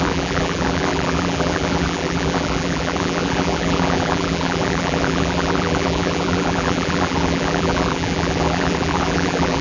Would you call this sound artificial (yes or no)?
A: yes